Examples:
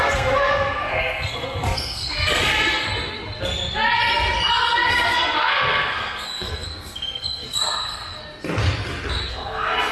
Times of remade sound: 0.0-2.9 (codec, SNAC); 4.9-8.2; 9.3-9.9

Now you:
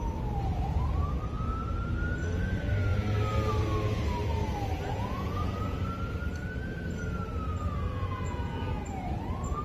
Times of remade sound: 4.9-5.8 (vocoder, Vocos); 7.9-8.6